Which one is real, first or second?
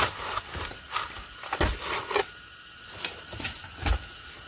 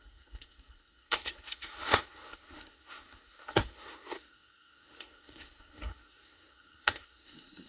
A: first